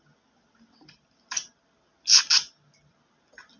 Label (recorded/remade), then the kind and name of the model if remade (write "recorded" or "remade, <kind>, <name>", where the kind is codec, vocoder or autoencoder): recorded